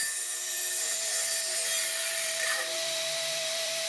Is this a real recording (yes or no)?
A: no